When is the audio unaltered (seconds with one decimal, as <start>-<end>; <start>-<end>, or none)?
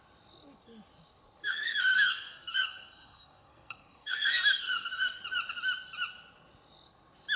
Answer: 0.0-1.4; 5.2-7.4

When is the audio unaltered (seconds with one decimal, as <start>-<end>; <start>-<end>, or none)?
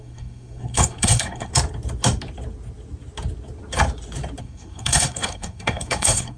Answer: 1.5-4.4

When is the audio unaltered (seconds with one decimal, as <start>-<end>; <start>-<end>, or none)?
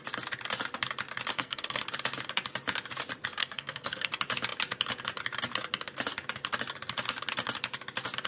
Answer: 0.0-1.3; 1.8-3.4; 4.1-8.3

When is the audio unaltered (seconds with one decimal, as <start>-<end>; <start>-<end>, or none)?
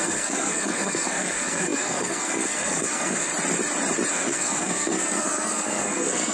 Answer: 3.3-4.1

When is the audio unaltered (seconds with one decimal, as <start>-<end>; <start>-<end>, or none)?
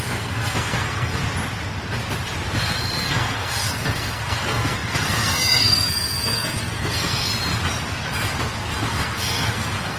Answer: 1.2-2.6; 7.3-8.9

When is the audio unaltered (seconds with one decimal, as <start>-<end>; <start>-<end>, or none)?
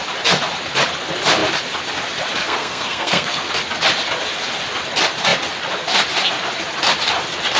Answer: 0.0-2.4; 3.5-7.6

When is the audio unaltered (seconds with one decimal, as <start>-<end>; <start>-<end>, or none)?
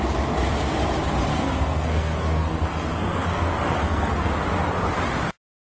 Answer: 0.0-1.3; 4.3-5.8